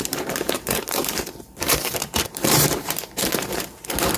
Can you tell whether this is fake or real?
fake